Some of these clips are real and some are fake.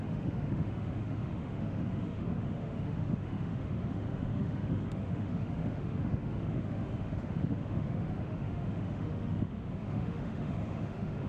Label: fake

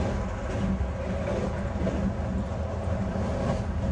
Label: real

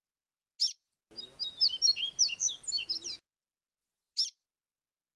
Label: real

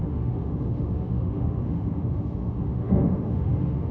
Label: fake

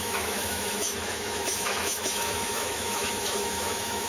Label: fake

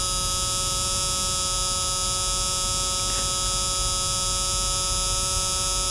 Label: real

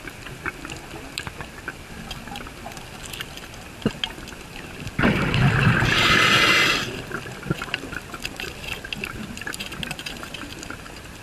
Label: real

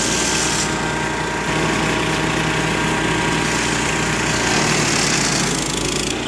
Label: real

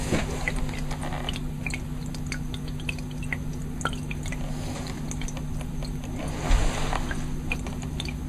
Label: real